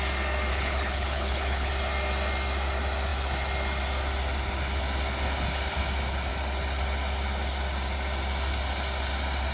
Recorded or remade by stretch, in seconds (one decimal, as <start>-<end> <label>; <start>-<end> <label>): 0.0-0.5 recorded; 0.5-1.7 remade; 1.7-9.5 recorded